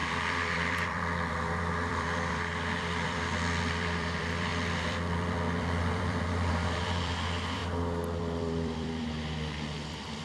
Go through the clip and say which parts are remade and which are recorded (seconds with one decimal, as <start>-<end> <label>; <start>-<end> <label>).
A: 0.0-7.6 remade; 7.6-8.2 recorded; 8.2-10.2 remade

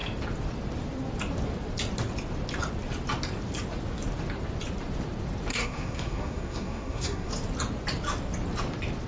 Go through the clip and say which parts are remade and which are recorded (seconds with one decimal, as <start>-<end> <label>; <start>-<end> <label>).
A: 0.0-5.5 recorded; 5.5-7.3 remade; 7.3-9.1 recorded

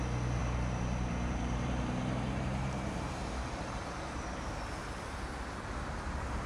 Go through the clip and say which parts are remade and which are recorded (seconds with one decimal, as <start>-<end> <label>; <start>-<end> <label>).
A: 0.0-0.4 recorded; 0.4-4.3 remade; 4.3-4.8 recorded; 4.8-5.5 remade; 5.5-6.5 recorded

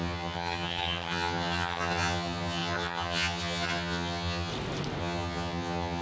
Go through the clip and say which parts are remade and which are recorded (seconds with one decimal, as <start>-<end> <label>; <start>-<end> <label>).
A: 0.0-4.5 remade; 4.5-5.0 recorded; 5.0-6.0 remade

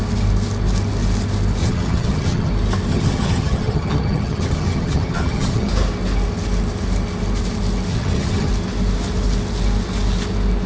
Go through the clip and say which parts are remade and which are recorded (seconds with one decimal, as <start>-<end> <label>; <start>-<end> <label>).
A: 0.0-1.6 recorded; 1.6-2.5 remade; 2.5-2.9 recorded; 2.9-5.7 remade; 5.7-7.9 recorded; 7.9-8.5 remade; 8.5-10.7 recorded

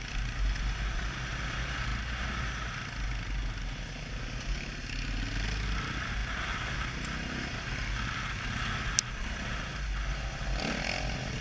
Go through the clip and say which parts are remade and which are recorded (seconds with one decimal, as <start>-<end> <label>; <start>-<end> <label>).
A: 0.0-11.4 recorded

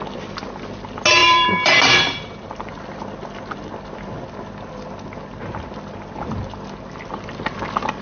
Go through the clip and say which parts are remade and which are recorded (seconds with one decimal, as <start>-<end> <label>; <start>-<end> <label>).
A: 0.0-1.2 recorded; 1.2-2.8 remade; 2.8-8.0 recorded

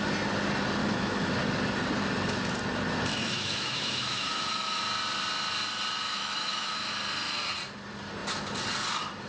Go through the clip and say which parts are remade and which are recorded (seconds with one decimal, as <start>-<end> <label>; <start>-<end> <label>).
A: 0.0-0.8 recorded; 0.8-1.3 remade; 1.3-3.2 recorded; 3.2-4.8 remade; 4.8-6.1 recorded; 6.1-6.9 remade; 6.9-9.3 recorded